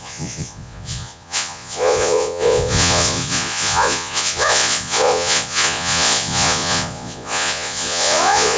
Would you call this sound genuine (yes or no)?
no